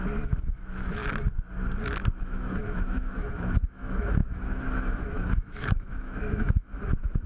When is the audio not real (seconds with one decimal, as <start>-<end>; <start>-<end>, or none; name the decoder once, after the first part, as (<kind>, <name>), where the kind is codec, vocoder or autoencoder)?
0.0-1.0 (autoencoder, DAC-VAE); 2.2-7.3